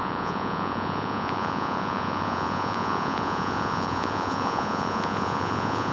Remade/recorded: remade